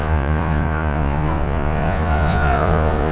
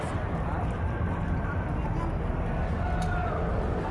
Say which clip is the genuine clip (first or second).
second